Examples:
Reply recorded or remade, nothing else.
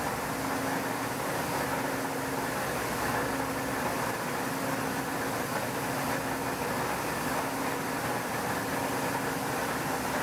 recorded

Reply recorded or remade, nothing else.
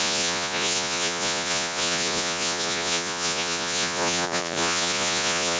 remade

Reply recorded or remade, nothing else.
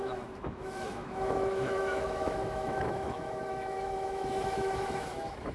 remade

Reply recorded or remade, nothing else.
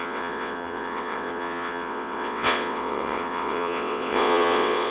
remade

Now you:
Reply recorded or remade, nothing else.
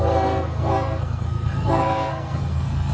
remade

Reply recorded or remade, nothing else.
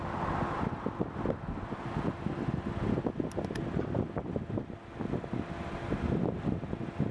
recorded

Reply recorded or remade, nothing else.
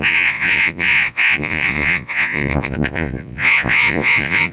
remade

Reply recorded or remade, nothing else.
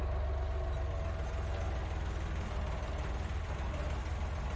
recorded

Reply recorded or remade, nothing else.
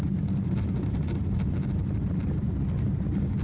recorded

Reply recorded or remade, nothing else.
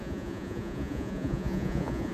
remade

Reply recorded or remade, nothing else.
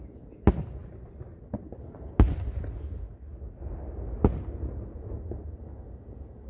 recorded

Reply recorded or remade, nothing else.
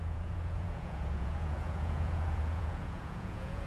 remade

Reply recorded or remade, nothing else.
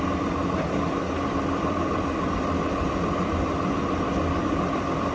remade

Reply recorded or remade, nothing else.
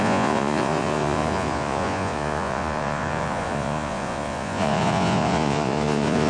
remade